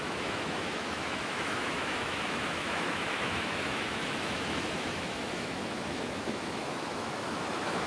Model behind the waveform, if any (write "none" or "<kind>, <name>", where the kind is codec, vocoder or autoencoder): autoencoder, DAC-VAE